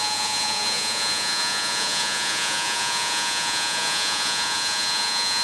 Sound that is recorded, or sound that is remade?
remade